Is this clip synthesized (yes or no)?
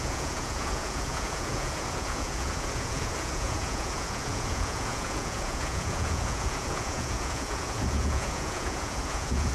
yes